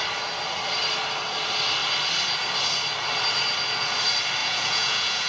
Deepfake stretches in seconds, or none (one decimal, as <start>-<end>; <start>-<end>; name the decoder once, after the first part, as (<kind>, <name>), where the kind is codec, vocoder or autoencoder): 4.4-5.3 (vocoder, Vocos)